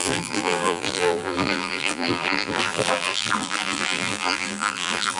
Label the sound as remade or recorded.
remade